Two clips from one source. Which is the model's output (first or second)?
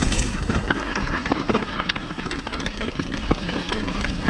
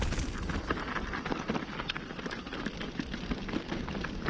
first